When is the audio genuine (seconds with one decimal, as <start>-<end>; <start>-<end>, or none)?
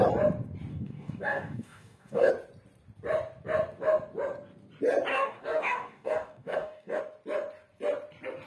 0.0-0.7; 2.3-5.1; 7.0-8.5